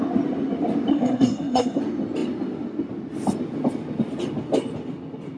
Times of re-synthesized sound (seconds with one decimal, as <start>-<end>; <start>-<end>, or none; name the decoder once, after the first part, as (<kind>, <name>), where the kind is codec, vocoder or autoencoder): 0.9-1.8 (codec, SNAC)